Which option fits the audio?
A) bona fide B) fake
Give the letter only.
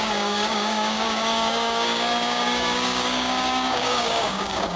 B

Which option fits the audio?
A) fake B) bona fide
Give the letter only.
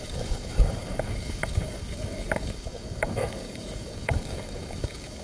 A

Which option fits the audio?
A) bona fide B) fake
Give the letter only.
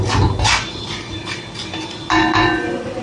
A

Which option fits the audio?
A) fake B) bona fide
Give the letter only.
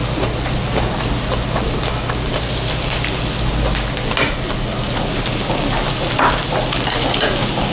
B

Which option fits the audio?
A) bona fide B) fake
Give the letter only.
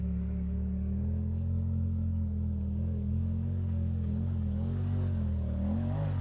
B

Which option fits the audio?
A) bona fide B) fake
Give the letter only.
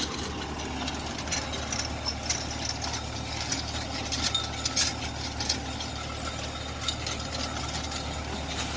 A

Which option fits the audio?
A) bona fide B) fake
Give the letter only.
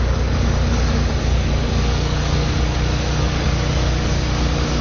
B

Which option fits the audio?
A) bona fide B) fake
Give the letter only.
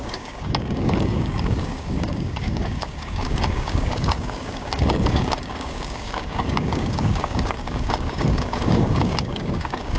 B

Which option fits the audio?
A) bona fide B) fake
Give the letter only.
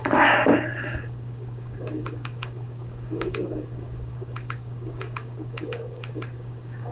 B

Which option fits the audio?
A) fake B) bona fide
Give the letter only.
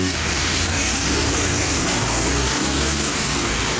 A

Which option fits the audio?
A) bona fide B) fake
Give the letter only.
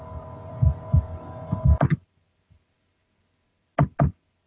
A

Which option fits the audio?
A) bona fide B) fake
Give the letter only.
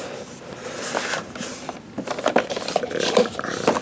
A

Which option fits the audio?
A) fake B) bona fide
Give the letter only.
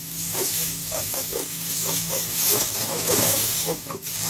A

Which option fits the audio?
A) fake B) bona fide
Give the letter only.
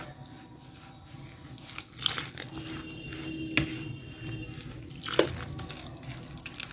B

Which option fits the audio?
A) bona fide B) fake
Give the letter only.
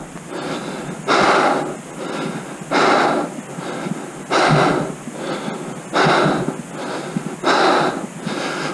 A